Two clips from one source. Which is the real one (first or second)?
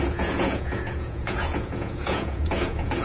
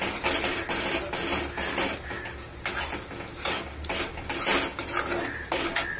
second